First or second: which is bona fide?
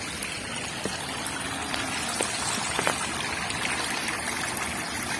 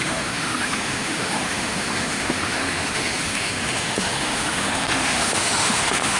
first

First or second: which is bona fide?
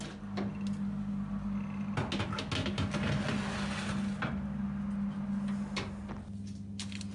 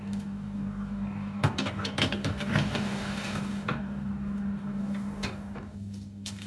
first